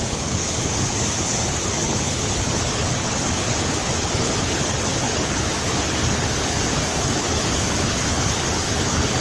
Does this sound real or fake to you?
fake